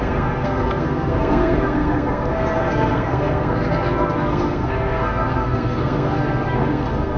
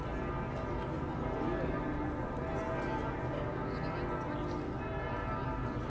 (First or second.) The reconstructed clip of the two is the first